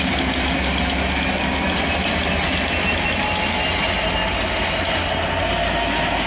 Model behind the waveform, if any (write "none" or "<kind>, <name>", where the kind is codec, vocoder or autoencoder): none